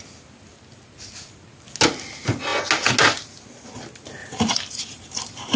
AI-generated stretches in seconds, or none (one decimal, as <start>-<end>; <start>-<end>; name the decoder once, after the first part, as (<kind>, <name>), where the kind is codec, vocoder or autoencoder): 4.2-5.6 (vocoder, BigVGAN v2)